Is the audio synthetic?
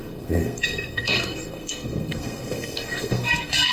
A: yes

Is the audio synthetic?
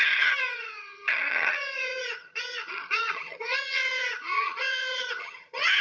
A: yes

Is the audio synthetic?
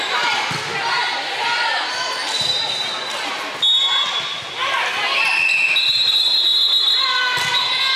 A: no